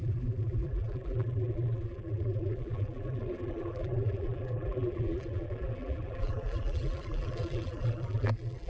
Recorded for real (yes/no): no